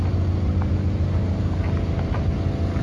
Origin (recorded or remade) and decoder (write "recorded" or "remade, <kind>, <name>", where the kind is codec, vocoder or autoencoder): recorded